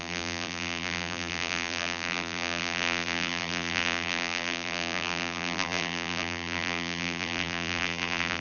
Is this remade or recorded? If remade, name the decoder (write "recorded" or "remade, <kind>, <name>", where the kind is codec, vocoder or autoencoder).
remade, vocoder, BigVGAN v2